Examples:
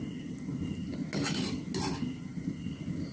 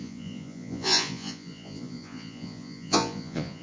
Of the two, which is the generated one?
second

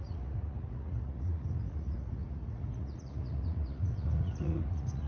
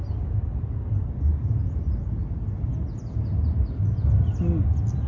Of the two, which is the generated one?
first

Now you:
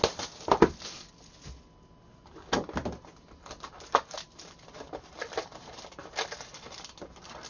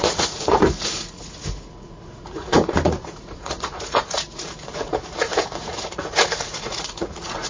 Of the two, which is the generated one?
second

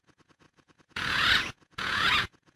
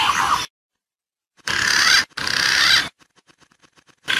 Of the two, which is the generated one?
first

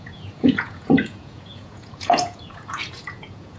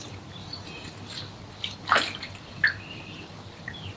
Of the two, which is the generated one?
first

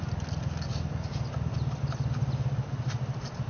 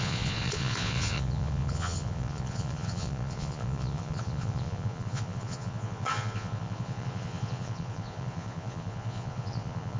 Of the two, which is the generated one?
second